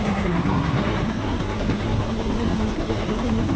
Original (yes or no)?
no